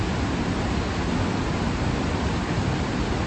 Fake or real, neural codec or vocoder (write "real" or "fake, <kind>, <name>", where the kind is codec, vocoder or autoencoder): real